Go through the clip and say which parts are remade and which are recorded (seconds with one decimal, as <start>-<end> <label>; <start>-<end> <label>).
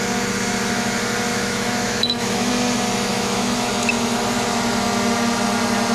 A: 0.0-1.3 recorded; 1.3-2.5 remade; 2.5-3.1 recorded; 3.1-3.7 remade; 3.7-5.9 recorded